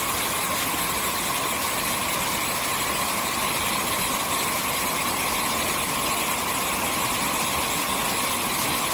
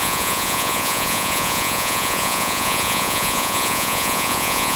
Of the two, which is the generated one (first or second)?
second